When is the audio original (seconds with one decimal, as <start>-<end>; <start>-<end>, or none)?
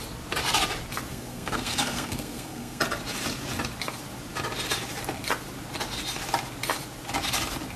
0.0-1.1; 2.8-7.8